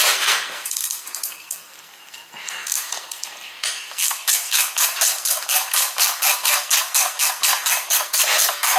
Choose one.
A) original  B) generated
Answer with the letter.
B